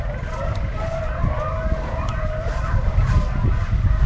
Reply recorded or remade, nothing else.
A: recorded